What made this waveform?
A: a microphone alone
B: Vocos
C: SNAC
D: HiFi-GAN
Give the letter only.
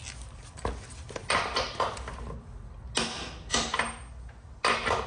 A